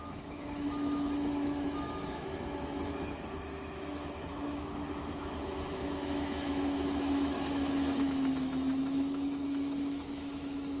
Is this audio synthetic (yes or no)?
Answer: yes